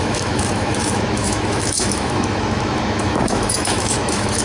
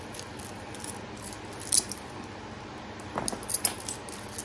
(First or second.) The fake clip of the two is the first